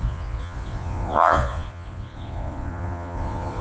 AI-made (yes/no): yes